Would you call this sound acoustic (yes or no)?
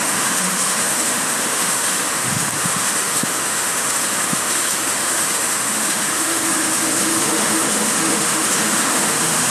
no